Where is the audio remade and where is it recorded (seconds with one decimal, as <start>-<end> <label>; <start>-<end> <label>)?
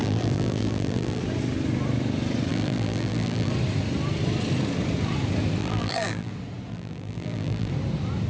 0.0-1.2 remade; 1.2-2.5 recorded; 2.5-3.5 remade; 3.5-5.6 recorded; 5.6-6.3 remade; 6.3-6.7 recorded; 6.7-7.7 remade; 7.7-8.3 recorded